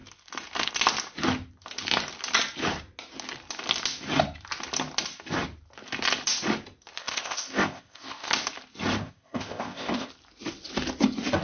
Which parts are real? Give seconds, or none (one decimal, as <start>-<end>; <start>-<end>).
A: 0.0-7.0; 8.3-9.0; 10.1-11.4